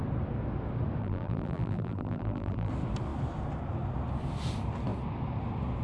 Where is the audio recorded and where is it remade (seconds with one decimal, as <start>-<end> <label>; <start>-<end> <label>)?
0.0-1.0 recorded; 1.0-2.7 remade; 2.7-5.8 recorded